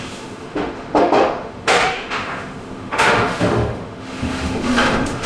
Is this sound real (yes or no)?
no